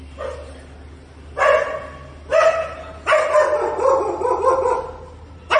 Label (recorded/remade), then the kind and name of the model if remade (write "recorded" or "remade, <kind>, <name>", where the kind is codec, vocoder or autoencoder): recorded